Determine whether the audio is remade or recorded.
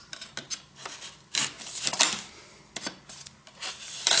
recorded